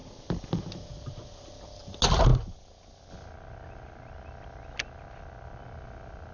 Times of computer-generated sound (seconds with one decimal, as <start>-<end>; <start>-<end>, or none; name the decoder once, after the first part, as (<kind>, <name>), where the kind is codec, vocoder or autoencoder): none